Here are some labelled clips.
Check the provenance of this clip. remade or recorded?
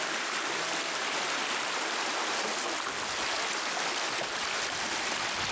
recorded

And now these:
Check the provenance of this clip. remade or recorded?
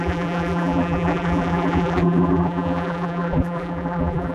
remade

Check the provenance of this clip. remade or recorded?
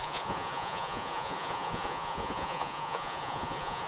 remade